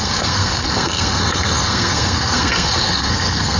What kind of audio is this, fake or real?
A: fake